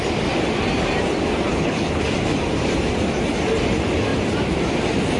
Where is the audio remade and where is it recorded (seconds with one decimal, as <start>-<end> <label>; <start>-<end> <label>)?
0.0-1.5 recorded; 1.5-2.0 remade; 2.0-5.2 recorded